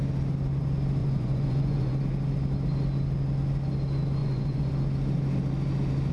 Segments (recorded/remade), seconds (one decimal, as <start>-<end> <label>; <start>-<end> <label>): 0.0-1.0 recorded; 1.0-2.0 remade; 2.0-4.2 recorded; 4.2-4.7 remade; 4.7-6.1 recorded